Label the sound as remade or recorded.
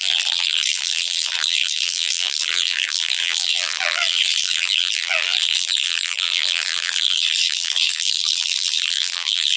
remade